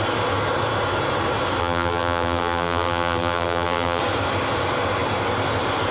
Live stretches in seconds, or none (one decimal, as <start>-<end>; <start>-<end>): 0.0-1.6; 4.0-5.9